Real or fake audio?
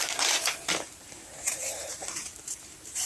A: fake